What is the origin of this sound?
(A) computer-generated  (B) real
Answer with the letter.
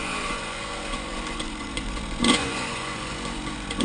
A